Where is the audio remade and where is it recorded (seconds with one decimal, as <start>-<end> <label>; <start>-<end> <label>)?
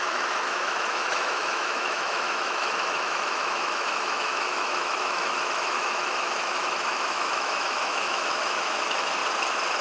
0.0-9.2 remade; 9.2-9.8 recorded